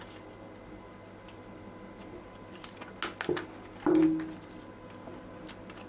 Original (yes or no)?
yes